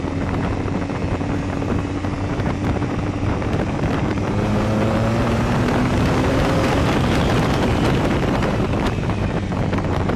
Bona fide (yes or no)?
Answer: no